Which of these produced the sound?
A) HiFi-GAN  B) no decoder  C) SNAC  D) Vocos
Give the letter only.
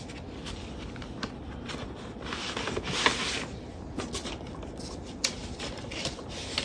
B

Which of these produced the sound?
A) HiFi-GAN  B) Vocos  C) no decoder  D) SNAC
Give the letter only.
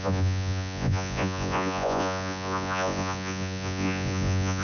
B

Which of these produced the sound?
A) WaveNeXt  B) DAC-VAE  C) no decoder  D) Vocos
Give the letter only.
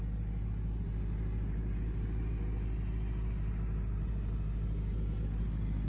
C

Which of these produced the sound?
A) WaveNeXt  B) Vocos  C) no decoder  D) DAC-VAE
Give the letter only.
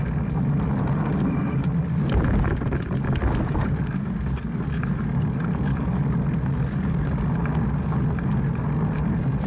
C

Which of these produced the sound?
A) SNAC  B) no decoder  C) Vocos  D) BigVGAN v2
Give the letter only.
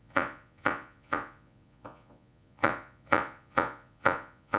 C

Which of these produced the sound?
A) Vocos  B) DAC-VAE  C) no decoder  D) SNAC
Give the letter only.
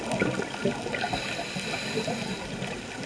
C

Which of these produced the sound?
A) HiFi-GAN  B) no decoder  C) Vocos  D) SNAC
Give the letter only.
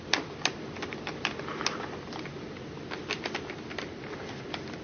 B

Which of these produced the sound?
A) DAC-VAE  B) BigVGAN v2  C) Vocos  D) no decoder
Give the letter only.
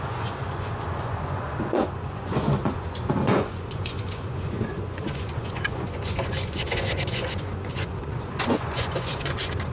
C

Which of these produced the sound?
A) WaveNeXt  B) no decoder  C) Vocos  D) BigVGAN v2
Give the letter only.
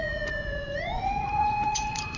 C